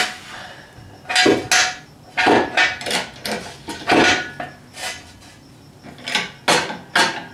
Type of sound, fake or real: real